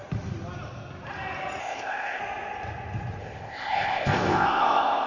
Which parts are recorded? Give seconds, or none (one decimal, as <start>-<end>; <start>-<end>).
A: 0.0-1.6; 2.2-3.2